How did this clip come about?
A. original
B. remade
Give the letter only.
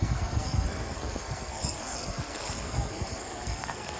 B